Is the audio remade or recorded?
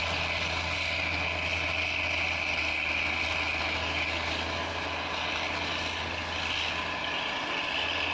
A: recorded